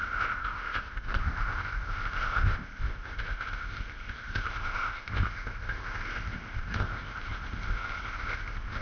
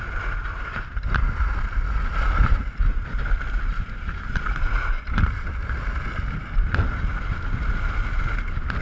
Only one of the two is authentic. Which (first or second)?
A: second